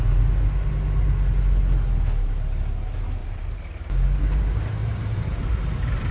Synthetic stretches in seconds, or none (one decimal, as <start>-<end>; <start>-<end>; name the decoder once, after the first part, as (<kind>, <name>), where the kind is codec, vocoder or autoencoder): 3.2-3.9 (vocoder, BigVGAN v2); 4.8-5.6

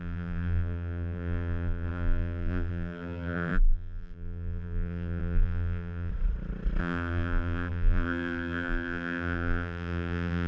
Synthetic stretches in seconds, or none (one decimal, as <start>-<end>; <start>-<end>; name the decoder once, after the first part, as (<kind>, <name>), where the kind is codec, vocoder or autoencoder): 0.0-6.1 (vocoder, BigVGAN v2); 6.8-10.5